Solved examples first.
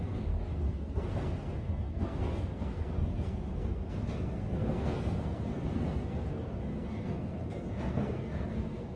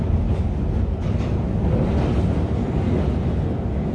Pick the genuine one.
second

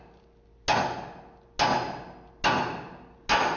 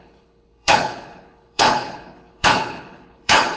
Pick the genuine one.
first